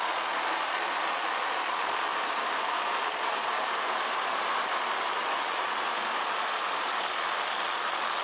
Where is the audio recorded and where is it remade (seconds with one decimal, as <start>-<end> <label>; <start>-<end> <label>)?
0.0-2.1 recorded; 2.1-7.0 remade; 7.0-8.2 recorded